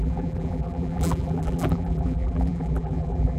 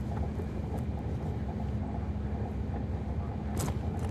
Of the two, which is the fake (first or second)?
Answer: first